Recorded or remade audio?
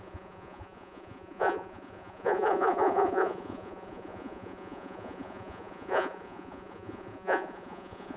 remade